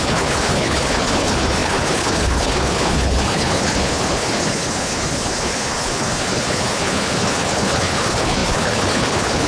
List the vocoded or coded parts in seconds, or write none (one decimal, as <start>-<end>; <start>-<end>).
0.0-9.5